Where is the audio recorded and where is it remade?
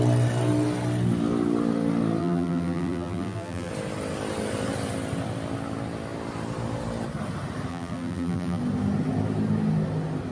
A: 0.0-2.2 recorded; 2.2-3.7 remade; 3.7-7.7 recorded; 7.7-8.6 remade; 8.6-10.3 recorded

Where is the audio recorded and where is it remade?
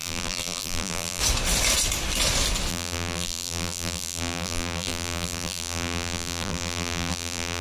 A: 0.0-1.2 remade; 1.2-2.7 recorded; 2.7-7.6 remade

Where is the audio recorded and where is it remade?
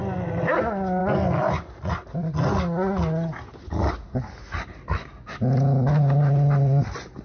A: 0.0-7.2 recorded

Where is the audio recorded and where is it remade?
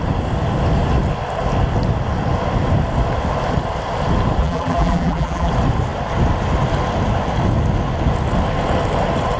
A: 0.0-4.4 recorded; 4.4-5.5 remade; 5.5-9.4 recorded